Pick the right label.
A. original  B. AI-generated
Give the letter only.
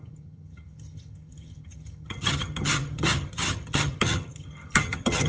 B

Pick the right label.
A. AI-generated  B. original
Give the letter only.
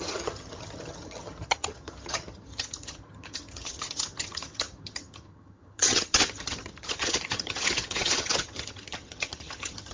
A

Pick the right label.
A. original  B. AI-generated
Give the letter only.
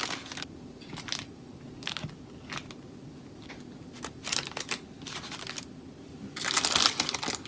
A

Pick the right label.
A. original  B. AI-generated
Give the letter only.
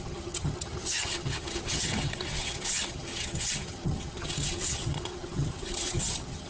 B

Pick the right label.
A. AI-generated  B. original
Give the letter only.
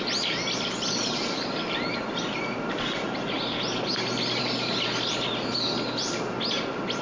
B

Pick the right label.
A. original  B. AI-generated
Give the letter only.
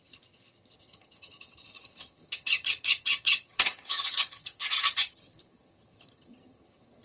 B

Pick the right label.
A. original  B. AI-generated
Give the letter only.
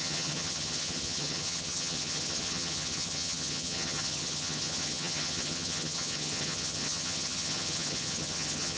B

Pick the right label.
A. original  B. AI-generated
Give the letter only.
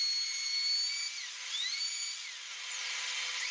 A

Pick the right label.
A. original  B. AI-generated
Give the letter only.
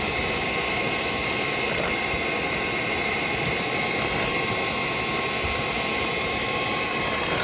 A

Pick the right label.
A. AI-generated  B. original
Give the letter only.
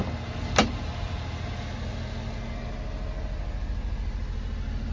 B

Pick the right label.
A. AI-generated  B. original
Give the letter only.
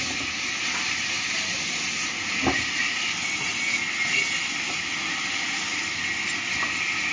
B